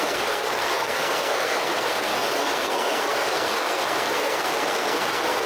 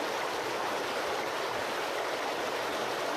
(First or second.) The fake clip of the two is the first